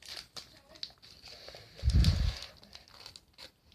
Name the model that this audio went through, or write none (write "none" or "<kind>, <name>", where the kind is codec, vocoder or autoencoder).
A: none